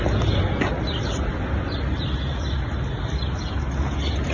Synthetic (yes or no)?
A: no